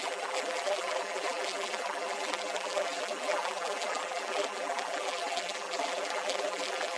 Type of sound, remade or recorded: remade